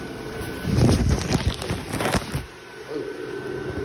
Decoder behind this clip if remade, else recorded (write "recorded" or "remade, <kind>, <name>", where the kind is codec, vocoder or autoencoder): recorded